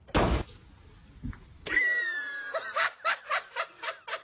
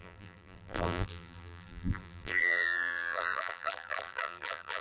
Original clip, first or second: first